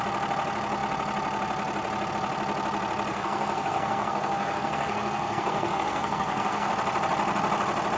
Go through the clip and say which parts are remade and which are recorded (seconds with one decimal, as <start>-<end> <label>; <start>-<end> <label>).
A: 0.0-3.1 recorded; 3.1-6.7 remade; 6.7-8.0 recorded